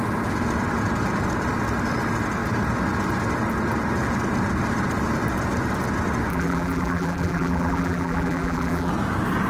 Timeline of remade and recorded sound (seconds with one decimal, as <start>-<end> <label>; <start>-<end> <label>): 0.0-6.3 recorded; 6.3-8.9 remade; 8.9-9.5 recorded